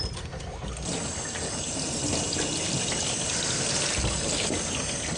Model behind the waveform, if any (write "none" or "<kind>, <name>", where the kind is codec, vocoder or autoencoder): none